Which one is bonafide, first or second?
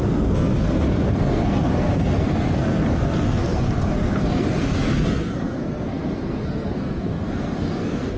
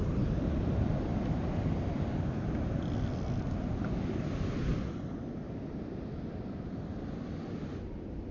second